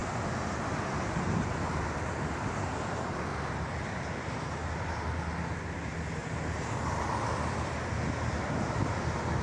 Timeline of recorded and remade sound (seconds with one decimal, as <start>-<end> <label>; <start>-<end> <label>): 0.0-3.3 recorded; 3.3-4.8 remade; 4.8-6.2 recorded; 6.2-7.1 remade; 7.1-9.4 recorded

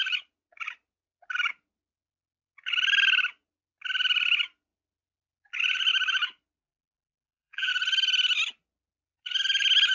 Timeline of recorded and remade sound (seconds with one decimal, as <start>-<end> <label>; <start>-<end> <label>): 0.0-6.6 recorded; 6.6-7.7 remade; 7.7-9.9 recorded